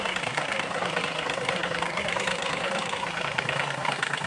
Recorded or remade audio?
remade